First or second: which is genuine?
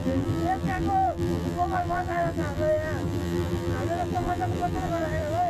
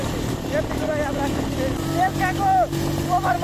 second